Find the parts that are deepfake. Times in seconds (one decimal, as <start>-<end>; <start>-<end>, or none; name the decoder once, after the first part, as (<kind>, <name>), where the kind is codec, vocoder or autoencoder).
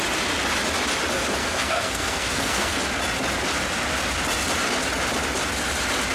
1.4-2.8 (codec, SNAC)